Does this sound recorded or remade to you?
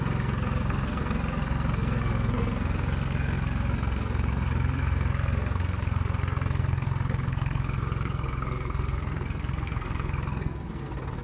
remade